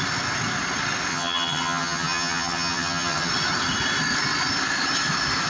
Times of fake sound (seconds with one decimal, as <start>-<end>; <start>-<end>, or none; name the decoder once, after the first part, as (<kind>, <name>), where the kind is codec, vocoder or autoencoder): 1.1-3.3 (vocoder, HiFi-GAN)